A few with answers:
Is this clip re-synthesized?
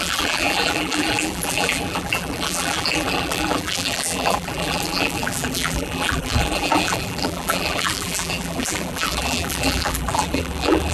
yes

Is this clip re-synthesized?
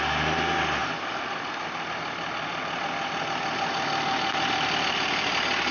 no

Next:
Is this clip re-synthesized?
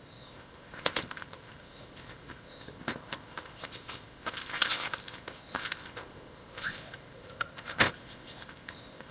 yes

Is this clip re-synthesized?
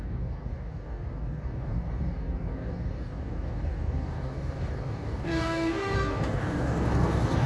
yes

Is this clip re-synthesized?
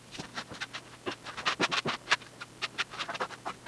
yes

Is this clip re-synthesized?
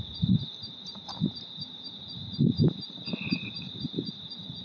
yes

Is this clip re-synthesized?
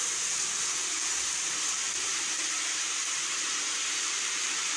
yes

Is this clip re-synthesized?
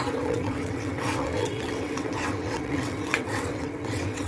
yes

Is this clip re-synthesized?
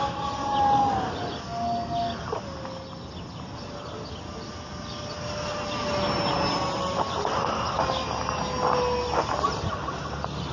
no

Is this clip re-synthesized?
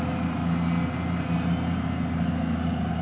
no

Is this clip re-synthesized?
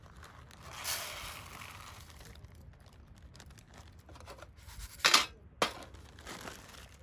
no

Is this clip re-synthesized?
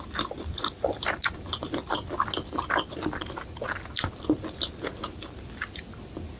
no